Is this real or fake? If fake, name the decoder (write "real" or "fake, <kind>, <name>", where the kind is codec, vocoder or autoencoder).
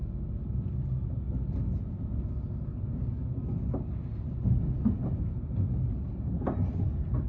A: real